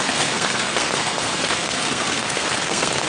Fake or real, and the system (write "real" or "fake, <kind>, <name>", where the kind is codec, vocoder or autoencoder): fake, codec, SNAC